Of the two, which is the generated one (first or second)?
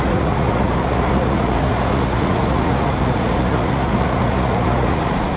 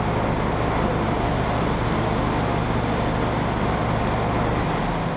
first